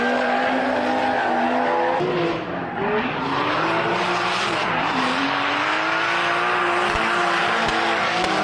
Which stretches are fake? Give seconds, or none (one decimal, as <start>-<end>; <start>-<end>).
none